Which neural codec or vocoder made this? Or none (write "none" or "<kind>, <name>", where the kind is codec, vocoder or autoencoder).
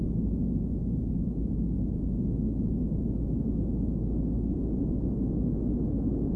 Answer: none